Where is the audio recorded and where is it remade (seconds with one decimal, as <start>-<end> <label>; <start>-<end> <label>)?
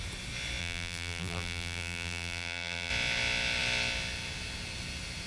0.0-0.6 recorded; 0.6-2.9 remade; 2.9-5.3 recorded